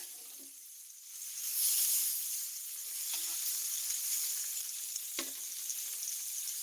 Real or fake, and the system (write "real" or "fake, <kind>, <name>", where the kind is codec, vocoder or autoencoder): real